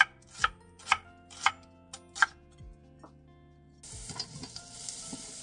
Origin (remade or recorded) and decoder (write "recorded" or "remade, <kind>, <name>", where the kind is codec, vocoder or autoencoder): recorded